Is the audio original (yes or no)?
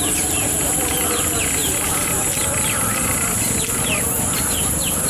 yes